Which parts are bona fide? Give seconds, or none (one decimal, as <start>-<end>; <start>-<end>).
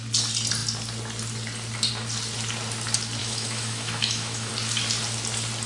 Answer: 0.0-3.2; 4.5-5.7